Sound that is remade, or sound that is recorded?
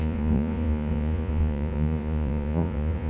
remade